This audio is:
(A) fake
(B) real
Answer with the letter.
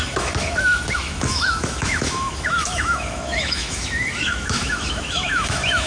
A